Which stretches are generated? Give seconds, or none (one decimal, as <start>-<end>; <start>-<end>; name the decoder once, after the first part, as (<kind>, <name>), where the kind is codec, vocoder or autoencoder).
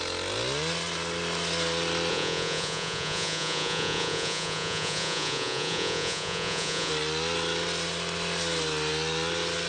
2.1-6.9 (vocoder, Vocos)